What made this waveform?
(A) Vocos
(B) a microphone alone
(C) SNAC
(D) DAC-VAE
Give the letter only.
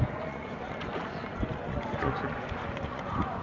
A